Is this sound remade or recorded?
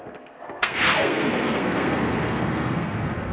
remade